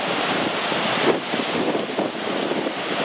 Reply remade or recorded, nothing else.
recorded